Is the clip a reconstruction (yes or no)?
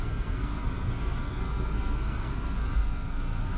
yes